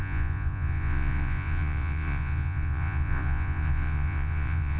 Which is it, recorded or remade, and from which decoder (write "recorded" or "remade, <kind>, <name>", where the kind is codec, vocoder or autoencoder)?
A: remade, vocoder, Vocos